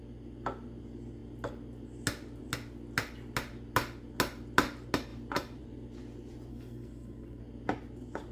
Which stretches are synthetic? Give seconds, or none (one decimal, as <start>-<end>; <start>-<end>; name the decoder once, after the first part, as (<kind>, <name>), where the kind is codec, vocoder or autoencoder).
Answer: 6.5-7.4 (codec, SNAC)